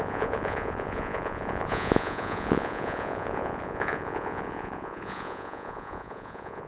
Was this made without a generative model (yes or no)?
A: no